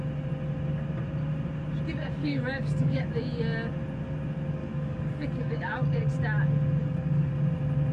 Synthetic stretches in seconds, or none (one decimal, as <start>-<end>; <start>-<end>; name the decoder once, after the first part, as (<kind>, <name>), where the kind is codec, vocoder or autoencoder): 2.2-3.1 (codec, DAC); 4.6-6.1; 6.8-7.3